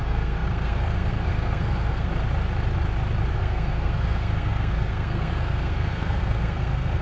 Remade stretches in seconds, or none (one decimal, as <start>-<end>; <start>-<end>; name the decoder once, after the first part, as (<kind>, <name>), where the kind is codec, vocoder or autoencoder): 0.0-2.1 (codec, SNAC); 3.3-7.0

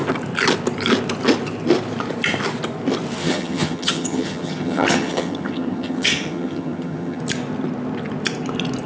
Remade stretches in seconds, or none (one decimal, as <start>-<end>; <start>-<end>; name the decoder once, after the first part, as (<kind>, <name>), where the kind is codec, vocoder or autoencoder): 3.2-7.2 (vocoder, HiFi-GAN)

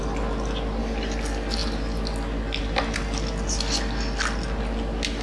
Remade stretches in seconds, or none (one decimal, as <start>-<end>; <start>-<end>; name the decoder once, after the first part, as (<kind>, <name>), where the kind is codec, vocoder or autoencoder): none

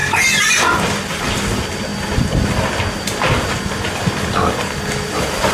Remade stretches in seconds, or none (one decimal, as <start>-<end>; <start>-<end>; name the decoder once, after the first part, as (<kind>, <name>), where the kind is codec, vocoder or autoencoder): none

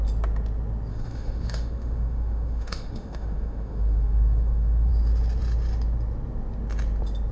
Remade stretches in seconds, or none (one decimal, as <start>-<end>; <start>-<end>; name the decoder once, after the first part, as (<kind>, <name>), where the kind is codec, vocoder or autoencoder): 0.9-4.9 (autoencoder, DAC-VAE)

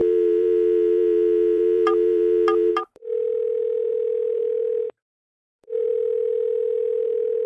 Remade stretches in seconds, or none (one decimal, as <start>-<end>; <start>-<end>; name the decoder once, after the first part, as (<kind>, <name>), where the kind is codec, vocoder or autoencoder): 0.0-5.9 (vocoder, BigVGAN v2); 7.0-7.5

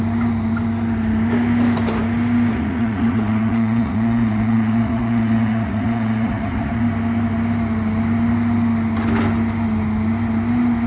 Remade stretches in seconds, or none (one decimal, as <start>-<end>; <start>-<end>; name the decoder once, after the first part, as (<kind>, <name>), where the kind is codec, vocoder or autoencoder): 2.5-6.8 (vocoder, Vocos)

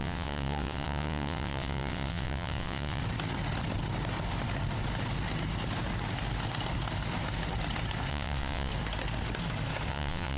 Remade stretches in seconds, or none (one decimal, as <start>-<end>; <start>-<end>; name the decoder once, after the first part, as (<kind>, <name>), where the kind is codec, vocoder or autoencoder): 0.0-3.0 (vocoder, WaveNeXt); 8.1-8.7; 9.9-10.4